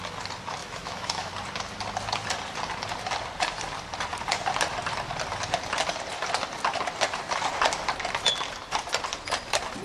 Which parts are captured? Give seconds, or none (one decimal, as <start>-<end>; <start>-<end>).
0.0-0.6; 1.3-9.8